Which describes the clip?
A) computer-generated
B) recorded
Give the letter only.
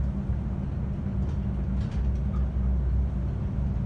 B